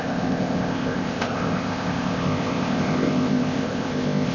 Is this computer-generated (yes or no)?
yes